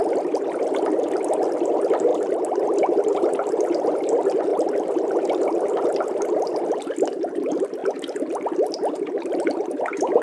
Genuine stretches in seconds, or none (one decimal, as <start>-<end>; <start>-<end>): 0.0-2.1; 2.6-4.5; 5.7-10.2